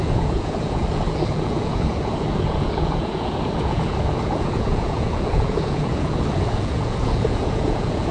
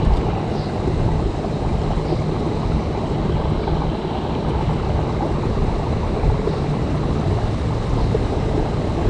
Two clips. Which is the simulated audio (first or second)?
first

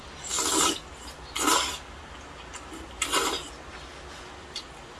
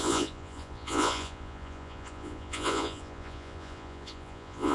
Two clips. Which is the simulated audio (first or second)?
second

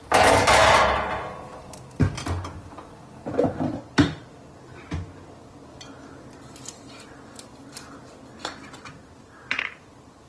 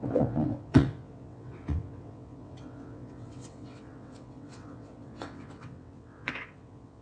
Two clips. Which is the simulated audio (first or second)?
second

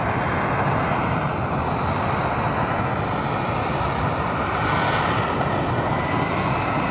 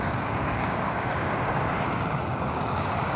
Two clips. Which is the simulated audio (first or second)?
second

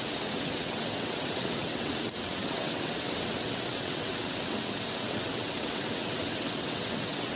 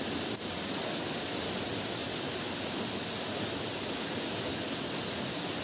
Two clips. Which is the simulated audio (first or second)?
first